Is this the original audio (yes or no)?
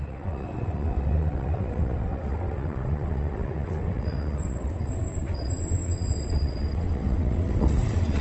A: no